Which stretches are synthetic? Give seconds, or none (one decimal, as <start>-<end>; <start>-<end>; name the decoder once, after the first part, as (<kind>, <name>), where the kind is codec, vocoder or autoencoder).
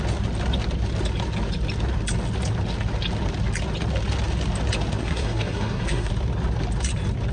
5.0-6.1 (codec, SNAC)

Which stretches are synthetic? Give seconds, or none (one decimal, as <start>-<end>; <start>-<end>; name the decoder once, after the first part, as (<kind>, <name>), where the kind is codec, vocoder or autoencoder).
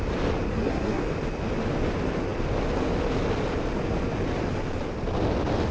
0.5-1.0 (codec, SNAC)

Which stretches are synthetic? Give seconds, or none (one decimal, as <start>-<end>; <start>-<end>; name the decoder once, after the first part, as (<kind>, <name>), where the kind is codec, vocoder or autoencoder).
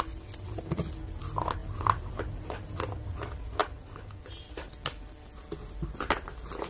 none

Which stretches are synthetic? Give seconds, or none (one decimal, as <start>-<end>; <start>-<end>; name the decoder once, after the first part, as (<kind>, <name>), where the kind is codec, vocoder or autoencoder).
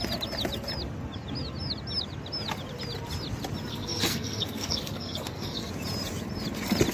3.7-5.7 (codec, SNAC)